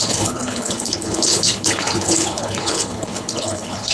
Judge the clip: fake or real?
fake